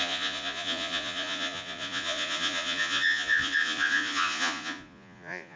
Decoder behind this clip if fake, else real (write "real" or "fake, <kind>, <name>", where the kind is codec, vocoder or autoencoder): fake, vocoder, Vocos